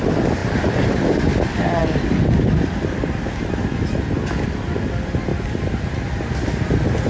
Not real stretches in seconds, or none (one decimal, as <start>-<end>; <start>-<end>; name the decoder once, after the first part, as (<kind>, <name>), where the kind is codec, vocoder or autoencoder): 1.8-3.3 (vocoder, BigVGAN v2); 5.3-5.9